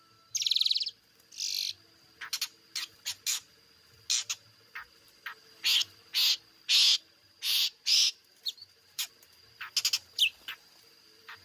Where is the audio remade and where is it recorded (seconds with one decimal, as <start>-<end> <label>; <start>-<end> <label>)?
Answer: 0.0-6.9 recorded; 6.9-9.1 remade; 9.1-11.4 recorded